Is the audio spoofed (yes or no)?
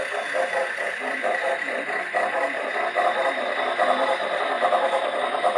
no